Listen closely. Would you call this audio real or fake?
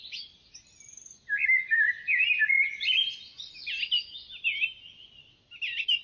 real